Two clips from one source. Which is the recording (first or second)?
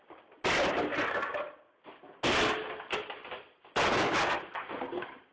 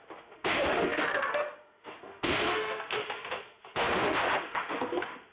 first